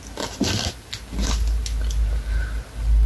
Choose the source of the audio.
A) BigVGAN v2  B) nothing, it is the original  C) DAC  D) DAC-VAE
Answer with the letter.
B